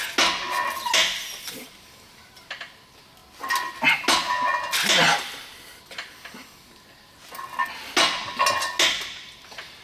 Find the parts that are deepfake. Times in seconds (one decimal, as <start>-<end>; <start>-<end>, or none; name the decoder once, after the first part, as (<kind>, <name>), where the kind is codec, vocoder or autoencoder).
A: none